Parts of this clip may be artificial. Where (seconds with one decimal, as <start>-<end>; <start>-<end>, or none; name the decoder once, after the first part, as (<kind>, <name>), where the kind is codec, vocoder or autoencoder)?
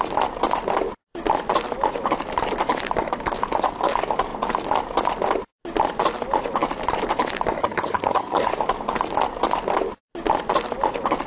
7.6-8.5 (vocoder, HiFi-GAN)